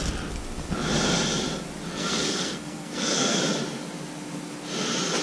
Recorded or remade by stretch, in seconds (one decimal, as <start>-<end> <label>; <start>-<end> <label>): 0.0-1.9 recorded; 1.9-3.4 remade; 3.4-5.2 recorded